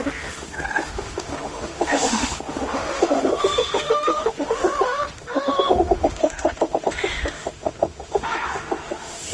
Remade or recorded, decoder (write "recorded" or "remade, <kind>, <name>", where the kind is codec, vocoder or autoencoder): remade, autoencoder, DAC-VAE